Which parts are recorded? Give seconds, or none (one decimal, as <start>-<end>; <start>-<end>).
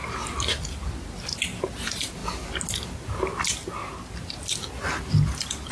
0.0-5.7